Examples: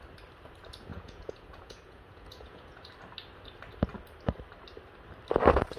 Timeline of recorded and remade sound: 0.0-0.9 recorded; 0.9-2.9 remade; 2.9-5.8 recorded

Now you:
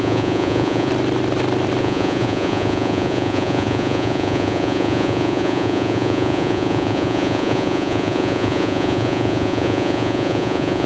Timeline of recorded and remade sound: 0.0-0.9 remade; 0.9-1.8 recorded; 1.8-10.9 remade

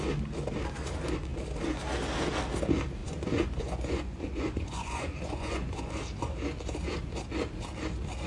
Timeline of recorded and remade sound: 0.0-3.0 recorded; 3.0-5.9 remade; 5.9-8.3 recorded

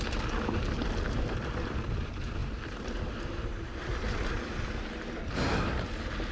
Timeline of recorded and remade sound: 0.0-6.3 recorded

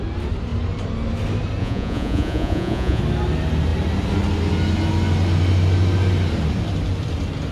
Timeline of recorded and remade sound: 0.0-1.6 recorded; 1.6-3.0 remade; 3.0-7.5 recorded